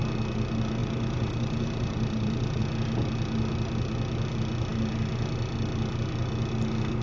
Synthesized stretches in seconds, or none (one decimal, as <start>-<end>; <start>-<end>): 0.8-2.6